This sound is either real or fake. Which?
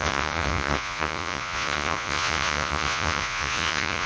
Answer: fake